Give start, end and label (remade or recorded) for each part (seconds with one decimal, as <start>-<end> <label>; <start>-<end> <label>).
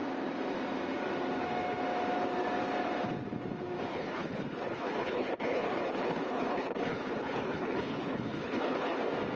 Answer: 0.0-3.9 recorded; 3.9-9.0 remade; 9.0-9.4 recorded